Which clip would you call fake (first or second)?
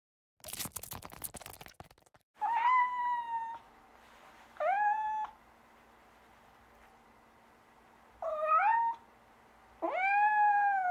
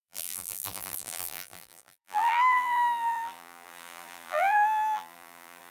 second